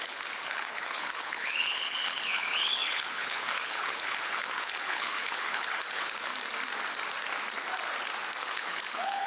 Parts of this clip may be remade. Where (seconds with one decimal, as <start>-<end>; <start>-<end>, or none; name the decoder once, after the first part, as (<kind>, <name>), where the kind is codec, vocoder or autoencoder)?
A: 0.0-6.3 (codec, HILCodec); 8.4-9.3